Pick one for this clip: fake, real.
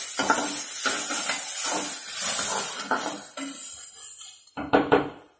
real